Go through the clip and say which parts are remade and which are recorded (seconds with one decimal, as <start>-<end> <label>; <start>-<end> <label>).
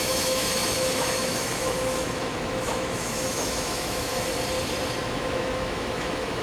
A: 0.0-4.1 remade; 4.1-5.0 recorded; 5.0-6.4 remade